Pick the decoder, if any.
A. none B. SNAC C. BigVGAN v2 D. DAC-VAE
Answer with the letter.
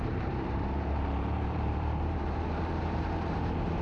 C